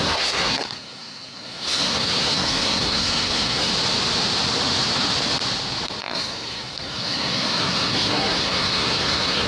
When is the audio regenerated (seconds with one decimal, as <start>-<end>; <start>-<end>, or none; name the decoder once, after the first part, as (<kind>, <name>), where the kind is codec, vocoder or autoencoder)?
0.0-3.7 (codec, SNAC); 6.0-9.5